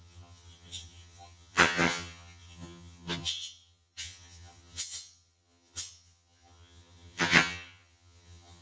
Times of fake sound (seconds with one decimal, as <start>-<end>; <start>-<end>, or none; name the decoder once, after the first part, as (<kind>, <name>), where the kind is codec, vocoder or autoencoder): 0.0-8.6 (vocoder, HiFi-GAN)